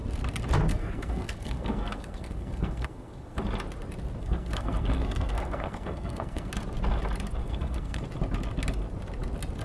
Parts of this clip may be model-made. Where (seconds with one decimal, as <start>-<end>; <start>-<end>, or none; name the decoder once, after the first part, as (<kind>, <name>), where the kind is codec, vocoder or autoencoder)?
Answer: 0.7-3.4 (codec, SNAC); 4.2-6.5; 7.4-8.0